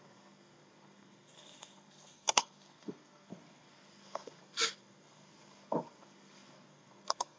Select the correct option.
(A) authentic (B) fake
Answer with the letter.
B